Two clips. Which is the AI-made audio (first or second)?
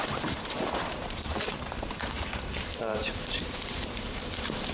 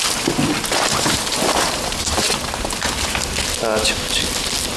first